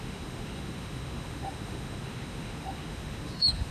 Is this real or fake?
fake